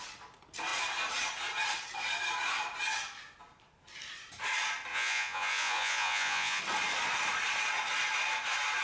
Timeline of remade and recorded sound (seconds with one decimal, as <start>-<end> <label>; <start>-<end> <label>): 0.0-4.9 recorded; 4.9-6.6 remade; 6.6-8.8 recorded